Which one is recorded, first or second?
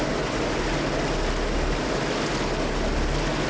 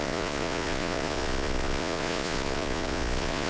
first